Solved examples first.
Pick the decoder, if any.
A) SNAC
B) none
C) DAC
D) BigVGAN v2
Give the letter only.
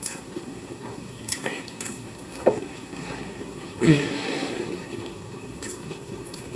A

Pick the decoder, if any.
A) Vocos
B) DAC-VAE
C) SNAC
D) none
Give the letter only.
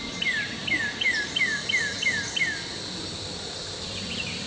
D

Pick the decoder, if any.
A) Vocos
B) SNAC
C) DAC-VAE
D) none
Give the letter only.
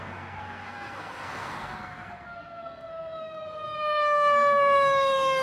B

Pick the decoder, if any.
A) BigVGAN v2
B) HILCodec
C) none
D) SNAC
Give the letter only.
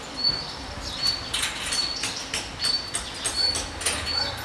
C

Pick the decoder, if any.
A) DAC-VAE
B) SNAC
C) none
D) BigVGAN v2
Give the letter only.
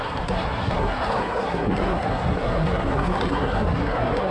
B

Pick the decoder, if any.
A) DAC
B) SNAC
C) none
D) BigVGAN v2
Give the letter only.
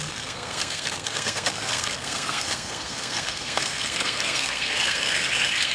B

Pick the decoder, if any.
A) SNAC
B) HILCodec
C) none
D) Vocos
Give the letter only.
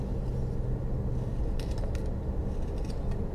C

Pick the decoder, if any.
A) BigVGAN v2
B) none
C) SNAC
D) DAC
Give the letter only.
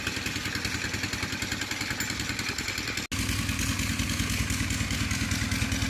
B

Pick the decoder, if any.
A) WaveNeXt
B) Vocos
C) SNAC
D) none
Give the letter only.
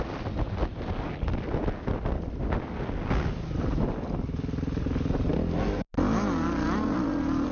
D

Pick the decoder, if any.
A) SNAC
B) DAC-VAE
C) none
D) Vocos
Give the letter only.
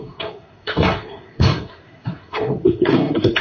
A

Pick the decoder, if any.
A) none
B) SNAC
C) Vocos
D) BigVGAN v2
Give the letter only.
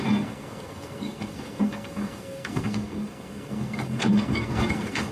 B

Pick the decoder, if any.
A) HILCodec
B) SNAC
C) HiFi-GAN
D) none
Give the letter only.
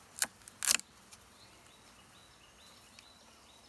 D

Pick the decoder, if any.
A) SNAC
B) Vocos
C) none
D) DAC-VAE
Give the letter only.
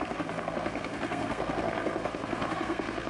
A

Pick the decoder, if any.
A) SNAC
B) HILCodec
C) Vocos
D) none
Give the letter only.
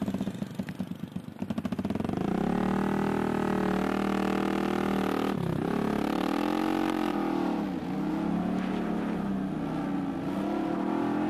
D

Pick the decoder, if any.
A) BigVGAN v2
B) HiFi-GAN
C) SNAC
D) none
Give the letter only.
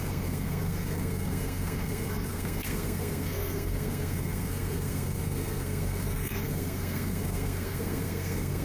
C